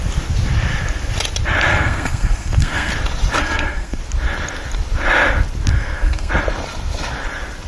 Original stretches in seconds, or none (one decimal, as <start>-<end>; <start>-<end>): 0.0-1.7; 2.9-3.4; 4.0-5.7; 6.3-7.7